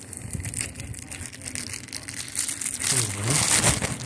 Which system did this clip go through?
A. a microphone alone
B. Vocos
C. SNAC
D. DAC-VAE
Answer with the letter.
A